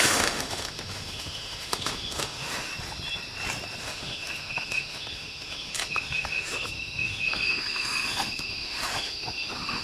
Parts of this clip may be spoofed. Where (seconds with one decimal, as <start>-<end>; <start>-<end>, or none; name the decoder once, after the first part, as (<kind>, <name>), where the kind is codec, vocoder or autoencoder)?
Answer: 0.0-2.7 (autoencoder, DAC-VAE); 3.8-9.8